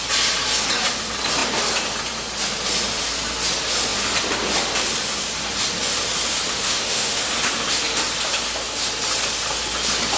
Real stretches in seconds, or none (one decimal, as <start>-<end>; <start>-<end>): 0.0-6.5; 7.2-10.2

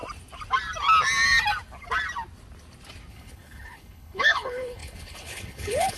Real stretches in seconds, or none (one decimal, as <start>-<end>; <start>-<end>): 0.0-3.1

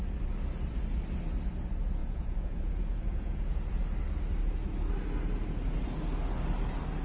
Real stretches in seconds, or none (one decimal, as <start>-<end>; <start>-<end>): 0.0-2.0; 3.7-7.0

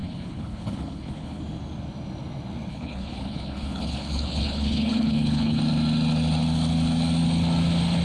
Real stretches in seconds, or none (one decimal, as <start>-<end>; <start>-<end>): 1.4-2.7; 5.6-8.0

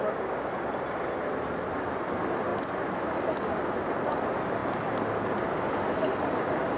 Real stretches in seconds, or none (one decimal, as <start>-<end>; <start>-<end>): 0.0-6.8

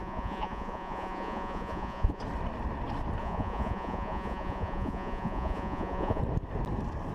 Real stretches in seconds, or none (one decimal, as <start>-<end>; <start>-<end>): 2.2-3.2; 6.2-7.1